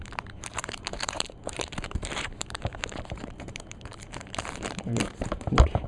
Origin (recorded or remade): remade